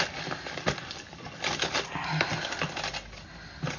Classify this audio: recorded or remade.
recorded